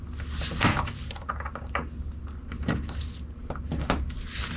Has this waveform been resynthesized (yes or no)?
no